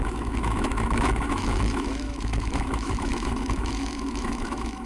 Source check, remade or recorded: remade